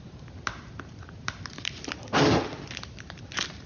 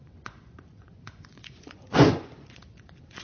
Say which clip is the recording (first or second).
first